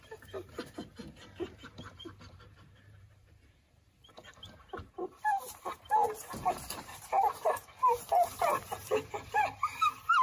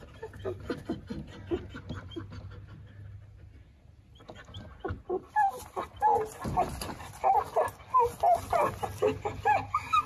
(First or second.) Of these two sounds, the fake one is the first